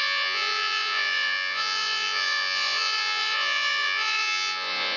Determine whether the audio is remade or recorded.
remade